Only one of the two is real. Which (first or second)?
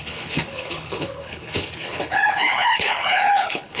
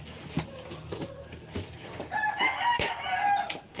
second